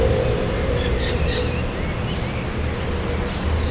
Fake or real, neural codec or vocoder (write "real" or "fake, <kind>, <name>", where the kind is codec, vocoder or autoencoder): real